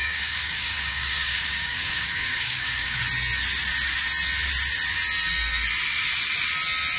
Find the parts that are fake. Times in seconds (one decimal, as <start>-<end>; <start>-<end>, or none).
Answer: 0.0-3.0